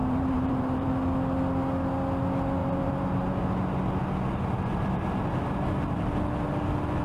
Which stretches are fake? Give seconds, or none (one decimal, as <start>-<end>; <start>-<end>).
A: 0.0-0.9; 2.6-3.4